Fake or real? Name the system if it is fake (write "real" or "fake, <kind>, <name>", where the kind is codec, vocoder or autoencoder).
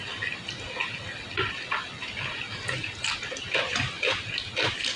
real